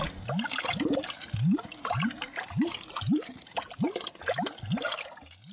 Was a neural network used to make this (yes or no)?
no